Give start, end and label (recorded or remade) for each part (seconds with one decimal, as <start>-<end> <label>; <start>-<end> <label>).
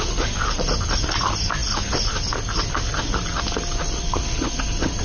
0.0-5.0 recorded